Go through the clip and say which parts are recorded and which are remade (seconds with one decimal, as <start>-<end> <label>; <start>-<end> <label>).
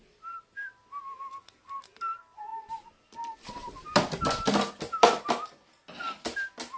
0.0-6.8 recorded